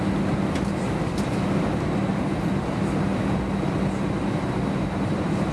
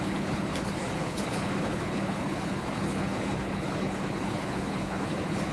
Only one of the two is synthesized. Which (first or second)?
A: second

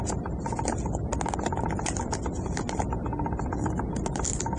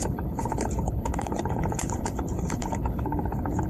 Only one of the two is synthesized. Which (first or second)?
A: second